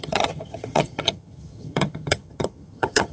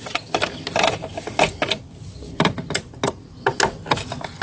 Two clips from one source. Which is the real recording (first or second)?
second